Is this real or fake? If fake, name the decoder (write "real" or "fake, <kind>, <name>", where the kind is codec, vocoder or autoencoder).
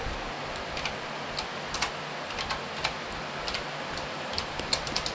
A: real